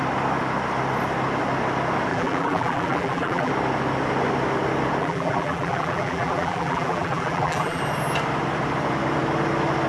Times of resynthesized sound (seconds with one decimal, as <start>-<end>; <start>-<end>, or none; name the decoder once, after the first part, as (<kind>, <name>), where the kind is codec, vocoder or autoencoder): 2.1-3.5 (vocoder, BigVGAN v2); 5.0-7.8

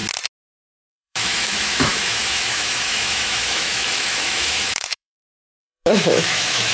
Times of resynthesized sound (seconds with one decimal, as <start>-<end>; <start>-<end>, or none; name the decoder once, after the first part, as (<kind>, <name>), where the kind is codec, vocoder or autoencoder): 0.5-6.7 (autoencoder, DAC-VAE)

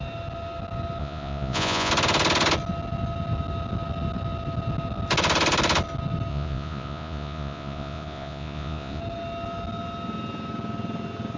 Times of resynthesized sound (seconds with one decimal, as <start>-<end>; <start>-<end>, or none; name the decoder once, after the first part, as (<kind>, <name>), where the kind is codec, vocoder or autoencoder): 1.0-1.9 (vocoder, Vocos); 6.3-9.0

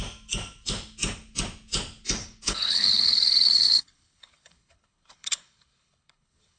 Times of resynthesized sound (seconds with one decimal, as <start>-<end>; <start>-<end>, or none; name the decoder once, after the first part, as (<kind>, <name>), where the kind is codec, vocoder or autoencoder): 2.2-6.6 (codec, HILCodec)

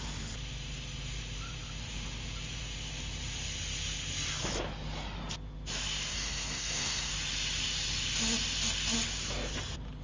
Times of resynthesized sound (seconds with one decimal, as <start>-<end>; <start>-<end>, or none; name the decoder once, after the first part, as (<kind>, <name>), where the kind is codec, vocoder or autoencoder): 6.1-7.1 (codec, SNAC)